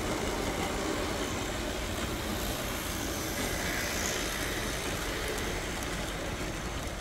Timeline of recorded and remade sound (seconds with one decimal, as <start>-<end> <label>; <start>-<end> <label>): 0.0-2.3 recorded; 2.3-3.2 remade; 3.2-4.6 recorded; 4.6-5.2 remade; 5.2-7.0 recorded